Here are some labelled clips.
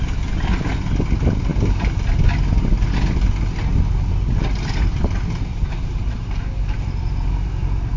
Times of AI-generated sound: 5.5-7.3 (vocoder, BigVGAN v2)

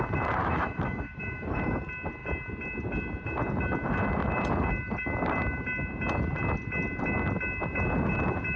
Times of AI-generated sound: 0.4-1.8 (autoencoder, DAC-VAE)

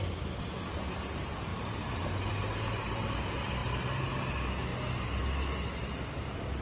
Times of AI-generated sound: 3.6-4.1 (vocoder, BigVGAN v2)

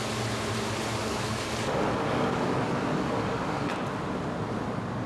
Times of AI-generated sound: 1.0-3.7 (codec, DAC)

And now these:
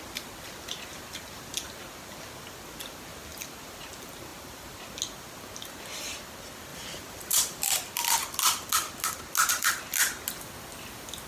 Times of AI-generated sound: 3.3-3.9 (vocoder, BigVGAN v2); 4.3-4.8; 6.7-7.7